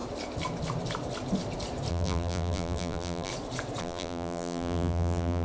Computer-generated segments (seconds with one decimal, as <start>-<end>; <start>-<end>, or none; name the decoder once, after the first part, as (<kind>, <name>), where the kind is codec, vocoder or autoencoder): 1.9-3.3 (vocoder, BigVGAN v2); 3.8-5.4